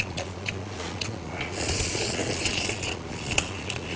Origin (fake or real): fake